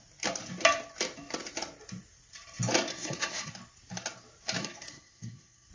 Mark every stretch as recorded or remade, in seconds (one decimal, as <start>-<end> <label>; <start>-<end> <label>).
0.0-2.9 recorded; 2.9-3.5 remade; 3.5-4.6 recorded; 4.6-5.7 remade